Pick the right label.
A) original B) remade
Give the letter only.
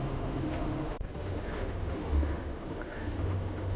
B